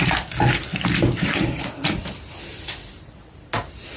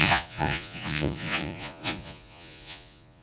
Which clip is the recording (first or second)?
first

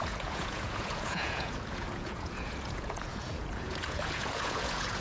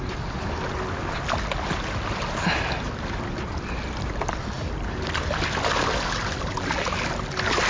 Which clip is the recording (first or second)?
second